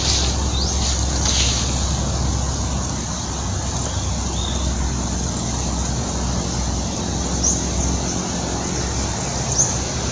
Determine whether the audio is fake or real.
real